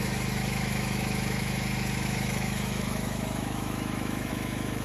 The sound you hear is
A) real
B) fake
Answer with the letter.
B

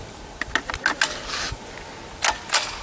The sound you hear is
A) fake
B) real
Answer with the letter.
B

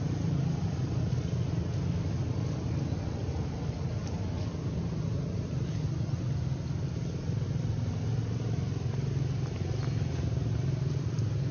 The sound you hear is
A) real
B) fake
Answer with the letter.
A